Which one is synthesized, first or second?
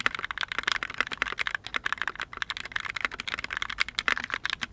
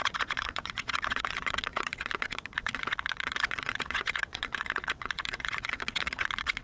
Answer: second